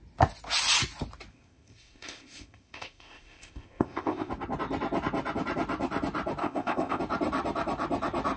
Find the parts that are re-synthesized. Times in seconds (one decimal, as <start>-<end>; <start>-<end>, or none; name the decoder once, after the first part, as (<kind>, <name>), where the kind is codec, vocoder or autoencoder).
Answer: 1.3-4.3 (codec, ZipCodec); 6.4-7.0